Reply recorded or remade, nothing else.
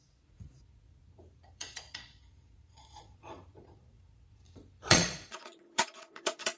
remade